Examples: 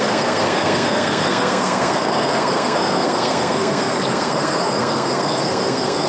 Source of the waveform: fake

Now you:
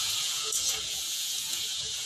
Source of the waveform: fake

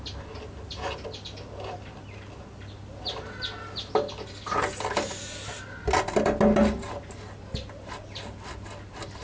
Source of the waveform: real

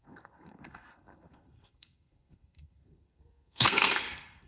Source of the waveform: fake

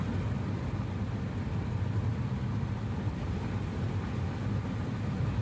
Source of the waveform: real